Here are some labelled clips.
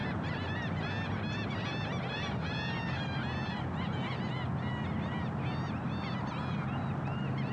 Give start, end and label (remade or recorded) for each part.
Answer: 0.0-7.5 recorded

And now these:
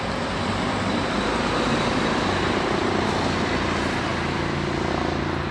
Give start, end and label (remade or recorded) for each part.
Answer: 0.0-5.5 recorded